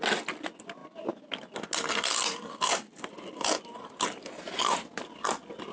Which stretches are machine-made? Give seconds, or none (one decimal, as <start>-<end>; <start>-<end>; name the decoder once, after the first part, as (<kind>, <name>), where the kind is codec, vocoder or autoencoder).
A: none

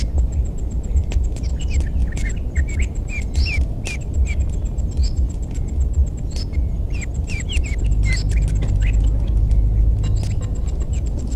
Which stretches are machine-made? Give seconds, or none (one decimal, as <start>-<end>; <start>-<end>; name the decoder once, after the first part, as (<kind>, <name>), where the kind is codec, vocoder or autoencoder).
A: none